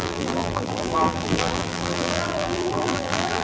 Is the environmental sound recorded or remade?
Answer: remade